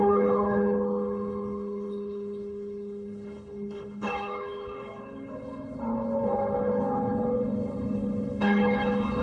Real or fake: fake